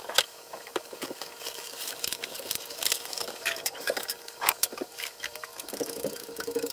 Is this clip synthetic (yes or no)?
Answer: yes